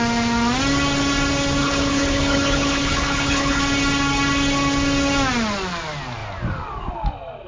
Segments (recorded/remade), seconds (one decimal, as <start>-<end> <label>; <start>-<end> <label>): 0.0-1.6 recorded; 1.6-3.6 remade; 3.6-7.5 recorded